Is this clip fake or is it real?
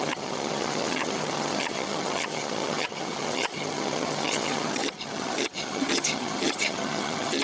fake